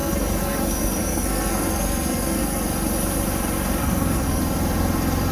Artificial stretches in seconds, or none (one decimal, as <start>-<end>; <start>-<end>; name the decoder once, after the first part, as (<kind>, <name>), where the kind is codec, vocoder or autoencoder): 0.0-2.6 (codec, SNAC); 3.8-4.4